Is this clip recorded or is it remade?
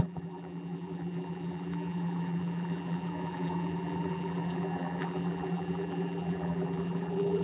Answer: remade